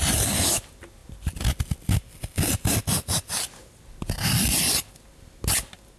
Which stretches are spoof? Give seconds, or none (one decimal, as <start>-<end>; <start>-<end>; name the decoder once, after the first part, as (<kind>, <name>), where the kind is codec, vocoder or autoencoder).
none

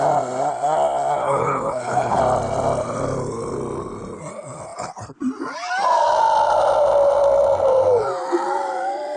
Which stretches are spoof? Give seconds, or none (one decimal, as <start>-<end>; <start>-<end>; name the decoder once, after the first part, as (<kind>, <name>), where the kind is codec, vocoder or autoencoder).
1.2-2.2 (codec, HILCodec)

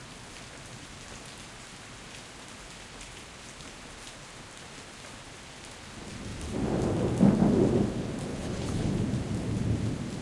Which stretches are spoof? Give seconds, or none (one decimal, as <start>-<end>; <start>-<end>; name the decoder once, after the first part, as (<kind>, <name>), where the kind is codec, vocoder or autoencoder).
8.3-8.9 (codec, HILCodec)